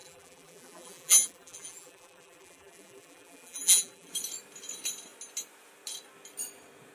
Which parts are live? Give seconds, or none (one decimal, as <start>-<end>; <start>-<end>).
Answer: 4.1-6.9